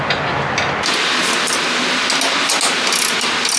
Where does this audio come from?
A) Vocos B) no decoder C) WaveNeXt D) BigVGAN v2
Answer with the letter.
B